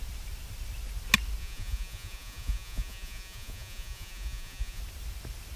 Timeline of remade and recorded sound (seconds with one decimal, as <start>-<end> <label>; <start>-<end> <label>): 0.0-1.4 recorded; 1.4-4.8 remade; 4.8-5.6 recorded